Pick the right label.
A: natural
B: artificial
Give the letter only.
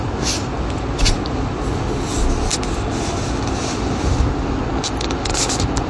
A